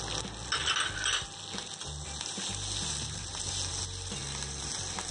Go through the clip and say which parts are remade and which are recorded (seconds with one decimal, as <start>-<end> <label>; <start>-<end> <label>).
0.0-5.1 recorded